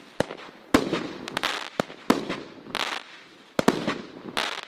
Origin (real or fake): real